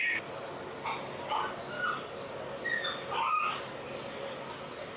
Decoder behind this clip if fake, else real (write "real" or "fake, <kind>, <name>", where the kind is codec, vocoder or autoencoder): real